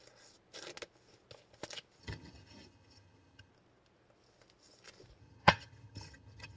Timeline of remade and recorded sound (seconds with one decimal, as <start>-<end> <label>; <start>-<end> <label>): 0.0-2.0 recorded; 2.0-3.5 remade; 3.5-5.2 recorded; 5.2-6.6 remade

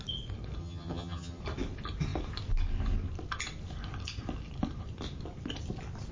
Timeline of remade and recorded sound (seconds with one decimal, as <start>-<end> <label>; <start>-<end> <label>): 0.0-0.6 recorded; 0.6-1.4 remade; 1.4-6.1 recorded

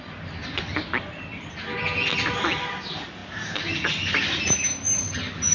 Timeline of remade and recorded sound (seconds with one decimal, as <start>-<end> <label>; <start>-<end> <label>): 0.0-5.5 recorded

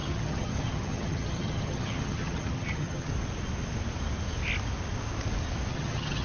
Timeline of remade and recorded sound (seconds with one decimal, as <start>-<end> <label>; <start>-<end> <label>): 0.0-3.1 remade; 3.1-5.7 recorded; 5.7-6.2 remade